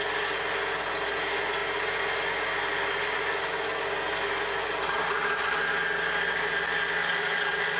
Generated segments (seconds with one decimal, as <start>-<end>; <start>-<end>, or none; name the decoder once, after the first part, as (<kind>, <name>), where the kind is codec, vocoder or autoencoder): none